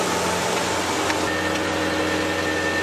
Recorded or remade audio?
recorded